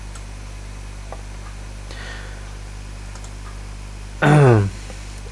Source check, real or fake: real